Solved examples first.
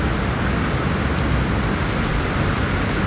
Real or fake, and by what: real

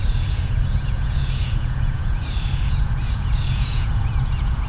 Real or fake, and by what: fake, vocoder, Vocos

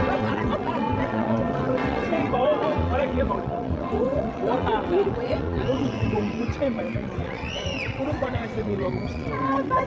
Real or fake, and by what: fake, vocoder, WaveNeXt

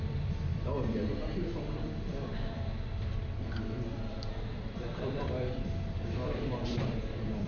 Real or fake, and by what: fake, vocoder, BigVGAN v2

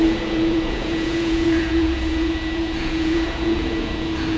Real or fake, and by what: fake, vocoder, Vocos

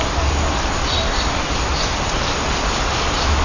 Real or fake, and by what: real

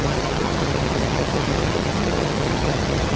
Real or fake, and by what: fake, vocoder, HiFi-GAN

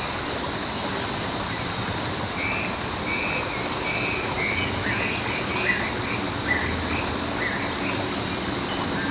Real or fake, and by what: real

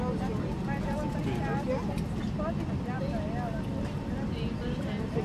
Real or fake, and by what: real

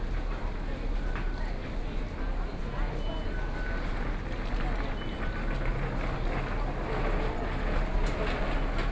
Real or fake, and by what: real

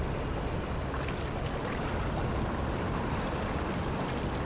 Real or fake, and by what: real